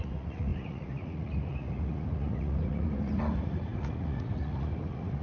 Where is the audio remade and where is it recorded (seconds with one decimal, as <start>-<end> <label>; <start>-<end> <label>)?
0.0-5.2 remade